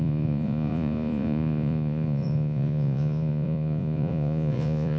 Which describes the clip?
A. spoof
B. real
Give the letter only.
A